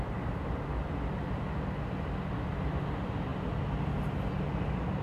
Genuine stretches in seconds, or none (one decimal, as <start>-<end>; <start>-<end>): 0.0-5.0